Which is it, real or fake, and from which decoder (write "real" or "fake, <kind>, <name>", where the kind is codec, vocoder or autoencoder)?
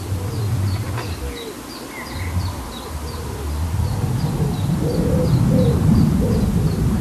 real